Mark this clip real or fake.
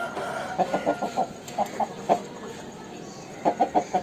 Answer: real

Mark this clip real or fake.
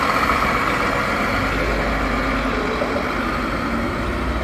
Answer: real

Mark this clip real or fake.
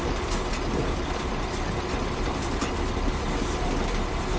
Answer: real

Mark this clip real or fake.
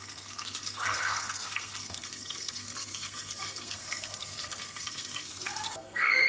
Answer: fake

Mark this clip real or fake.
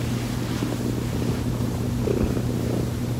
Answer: real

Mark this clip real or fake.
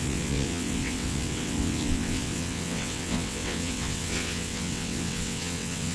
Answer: fake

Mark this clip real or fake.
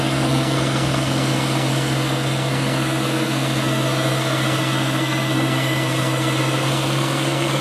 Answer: fake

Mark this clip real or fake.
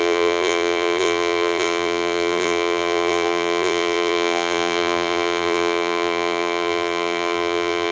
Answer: fake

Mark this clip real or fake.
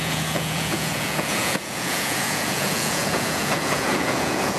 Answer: fake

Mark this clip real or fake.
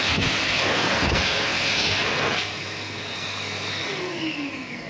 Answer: fake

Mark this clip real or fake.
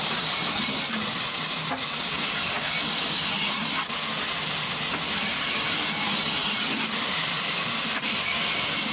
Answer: real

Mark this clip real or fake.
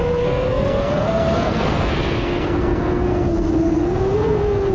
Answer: fake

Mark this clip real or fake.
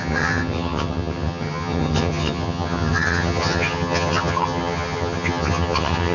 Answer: fake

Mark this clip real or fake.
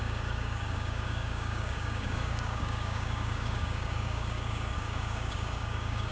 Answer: fake